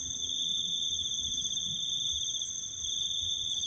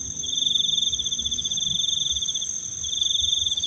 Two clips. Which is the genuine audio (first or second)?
second